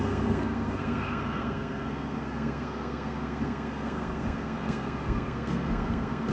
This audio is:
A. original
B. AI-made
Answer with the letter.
B